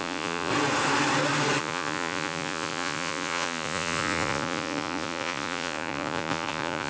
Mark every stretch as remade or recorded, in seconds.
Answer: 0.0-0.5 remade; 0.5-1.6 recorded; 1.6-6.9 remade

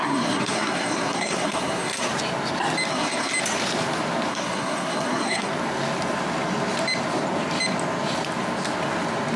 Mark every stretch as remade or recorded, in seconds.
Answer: 0.0-2.1 remade; 2.1-2.9 recorded; 2.9-3.3 remade; 3.3-4.3 recorded; 4.3-5.5 remade; 5.5-9.4 recorded